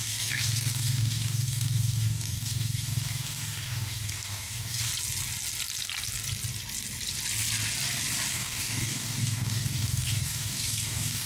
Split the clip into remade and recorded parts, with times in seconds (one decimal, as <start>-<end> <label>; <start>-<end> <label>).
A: 0.0-4.9 remade; 4.9-8.3 recorded; 8.3-11.3 remade